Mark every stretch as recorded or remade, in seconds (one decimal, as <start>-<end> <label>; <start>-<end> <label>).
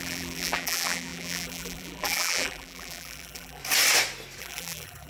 0.0-3.6 remade; 3.6-4.4 recorded; 4.4-5.1 remade